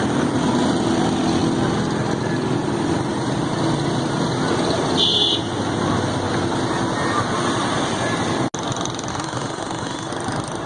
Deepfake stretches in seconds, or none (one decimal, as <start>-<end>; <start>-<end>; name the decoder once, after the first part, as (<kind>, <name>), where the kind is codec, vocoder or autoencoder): 9.1-10.1 (autoencoder, DAC-VAE)